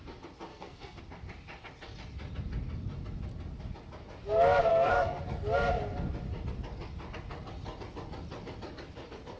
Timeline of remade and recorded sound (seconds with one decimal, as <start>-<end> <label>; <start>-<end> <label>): 0.0-0.5 recorded; 0.5-1.0 remade; 1.0-4.7 recorded; 4.7-5.2 remade; 5.2-9.4 recorded